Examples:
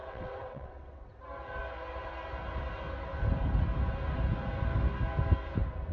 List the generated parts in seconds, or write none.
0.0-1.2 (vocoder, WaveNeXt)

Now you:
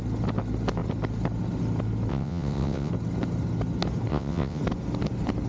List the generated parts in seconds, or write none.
2.1-2.9 (vocoder, WaveNeXt); 4.1-4.6

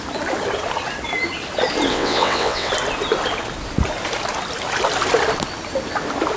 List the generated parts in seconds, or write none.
1.9-2.7 (vocoder, WaveNeXt)

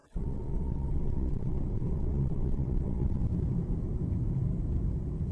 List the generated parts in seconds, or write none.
0.0-3.2 (vocoder, WaveNeXt)

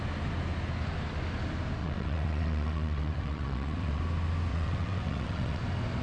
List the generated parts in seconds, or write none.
1.8-4.0 (vocoder, WaveNeXt); 4.5-5.6

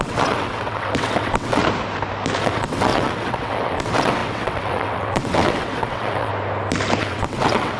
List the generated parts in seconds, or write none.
0.0-1.6 (vocoder, WaveNeXt); 2.4-6.3; 7.0-7.8

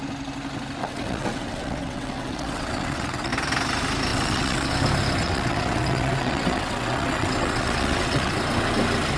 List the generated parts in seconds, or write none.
0.8-3.3 (vocoder, WaveNeXt); 4.1-4.7; 5.2-8.3

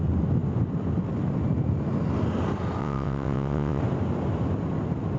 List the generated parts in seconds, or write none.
2.8-3.8 (vocoder, WaveNeXt)